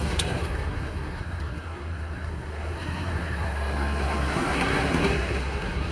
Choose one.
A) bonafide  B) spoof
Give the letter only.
B